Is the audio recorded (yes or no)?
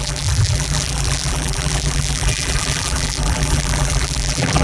no